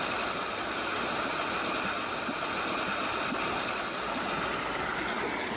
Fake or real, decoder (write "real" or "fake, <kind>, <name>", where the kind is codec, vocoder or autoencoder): real